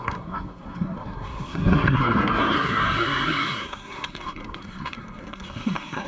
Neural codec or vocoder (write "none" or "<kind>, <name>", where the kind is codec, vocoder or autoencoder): codec, SNAC